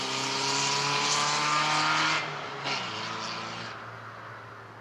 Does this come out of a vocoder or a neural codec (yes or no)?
no